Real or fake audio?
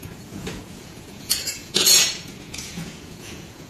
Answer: fake